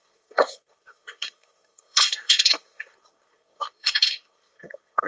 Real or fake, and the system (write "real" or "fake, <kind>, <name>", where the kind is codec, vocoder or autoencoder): fake, codec, SNAC